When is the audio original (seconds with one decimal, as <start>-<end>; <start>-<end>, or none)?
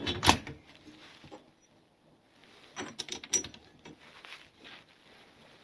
0.0-5.6